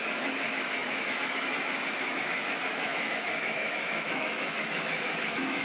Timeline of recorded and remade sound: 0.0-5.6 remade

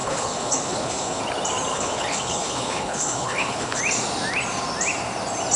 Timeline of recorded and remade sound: 0.0-1.2 remade; 1.2-1.7 recorded; 1.7-3.8 remade; 3.8-5.6 recorded

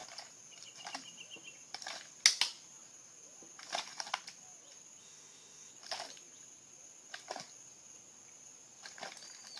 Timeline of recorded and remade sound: 0.0-5.0 recorded; 5.0-5.7 remade; 5.7-9.6 recorded